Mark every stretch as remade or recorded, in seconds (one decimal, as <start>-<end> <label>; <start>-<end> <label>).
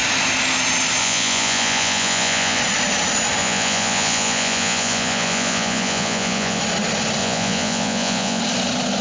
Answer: 0.0-1.0 recorded; 1.0-2.6 remade; 2.6-3.4 recorded; 3.4-6.6 remade; 6.6-7.2 recorded; 7.2-8.4 remade; 8.4-9.0 recorded